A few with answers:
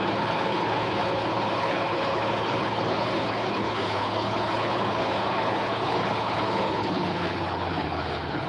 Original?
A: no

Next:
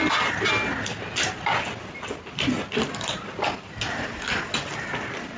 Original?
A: yes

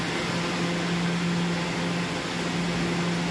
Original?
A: yes